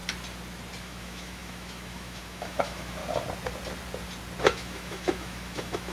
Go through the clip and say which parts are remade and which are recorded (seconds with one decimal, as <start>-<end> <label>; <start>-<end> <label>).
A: 0.0-0.8 recorded; 0.8-3.0 remade; 3.0-4.4 recorded; 4.4-5.9 remade